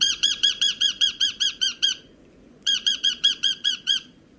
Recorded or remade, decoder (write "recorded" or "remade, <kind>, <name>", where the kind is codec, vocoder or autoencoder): remade, vocoder, Vocos